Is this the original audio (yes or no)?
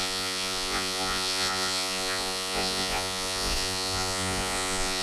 no